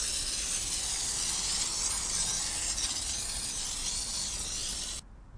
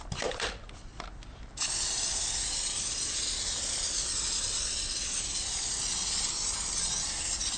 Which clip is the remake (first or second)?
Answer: second